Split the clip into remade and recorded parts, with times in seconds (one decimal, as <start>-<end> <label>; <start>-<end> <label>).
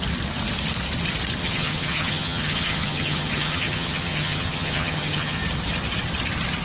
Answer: 0.0-1.4 recorded; 1.4-5.4 remade; 5.4-6.6 recorded